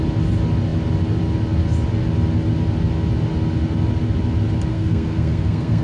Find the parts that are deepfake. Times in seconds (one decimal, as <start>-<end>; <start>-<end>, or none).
4.7-5.8